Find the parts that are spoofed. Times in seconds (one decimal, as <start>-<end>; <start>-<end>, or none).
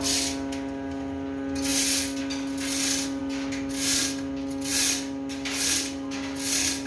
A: none